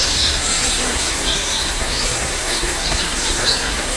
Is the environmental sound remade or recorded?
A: remade